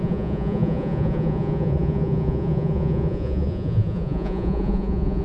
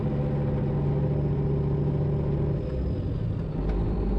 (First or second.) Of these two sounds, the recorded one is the second